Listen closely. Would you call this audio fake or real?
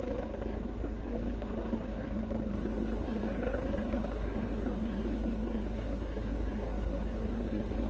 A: fake